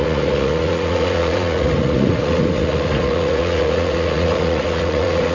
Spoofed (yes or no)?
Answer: yes